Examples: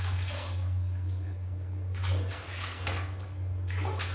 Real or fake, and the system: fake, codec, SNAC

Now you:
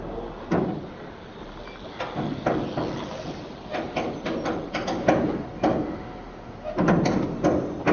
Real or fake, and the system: real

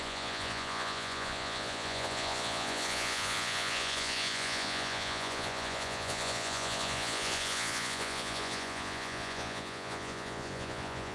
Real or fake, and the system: fake, vocoder, Vocos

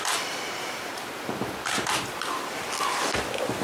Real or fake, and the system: real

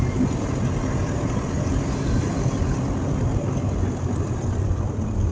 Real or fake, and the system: real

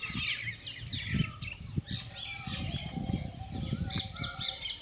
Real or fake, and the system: real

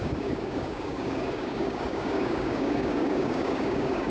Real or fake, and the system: fake, codec, DAC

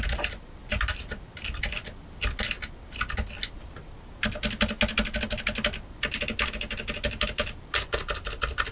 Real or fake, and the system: real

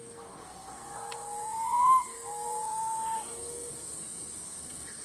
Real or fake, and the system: fake, codec, SNAC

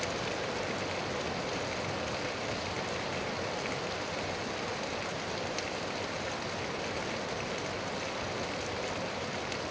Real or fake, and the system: fake, vocoder, BigVGAN v2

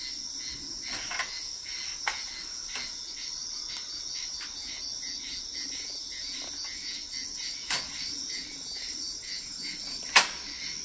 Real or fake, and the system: real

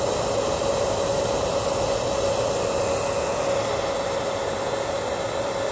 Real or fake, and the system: real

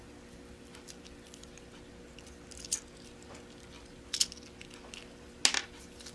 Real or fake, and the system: real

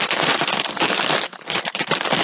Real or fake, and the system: real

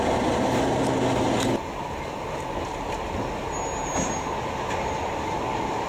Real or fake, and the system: real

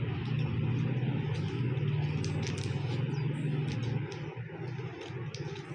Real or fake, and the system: real